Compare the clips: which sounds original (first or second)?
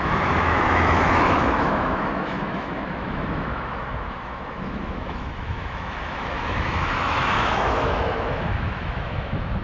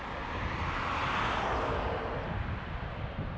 second